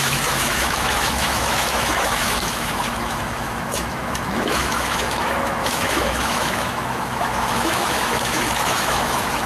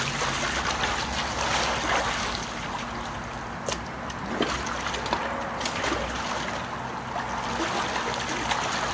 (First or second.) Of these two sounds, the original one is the second